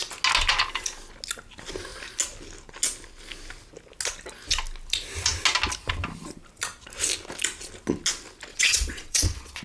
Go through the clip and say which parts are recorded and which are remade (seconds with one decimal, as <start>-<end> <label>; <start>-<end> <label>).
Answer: 0.0-8.5 recorded; 8.5-9.6 remade